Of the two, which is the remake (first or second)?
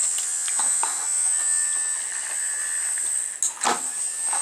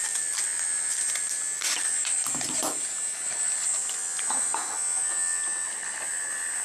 second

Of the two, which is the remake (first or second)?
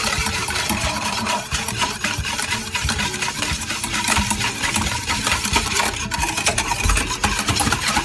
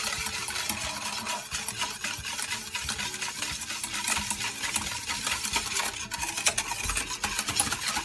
first